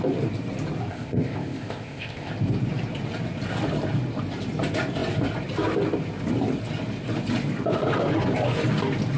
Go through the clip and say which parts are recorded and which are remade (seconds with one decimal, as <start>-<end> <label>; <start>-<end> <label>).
0.0-0.9 recorded; 0.9-2.3 remade; 2.3-9.2 recorded